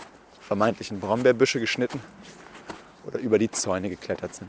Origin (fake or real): real